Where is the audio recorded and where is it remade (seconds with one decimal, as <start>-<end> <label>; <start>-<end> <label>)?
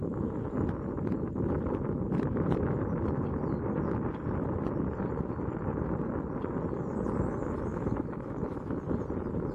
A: 0.0-7.7 recorded; 7.7-8.8 remade; 8.8-9.5 recorded